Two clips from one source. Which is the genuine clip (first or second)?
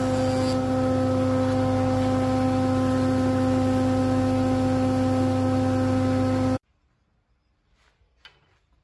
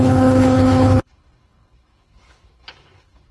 first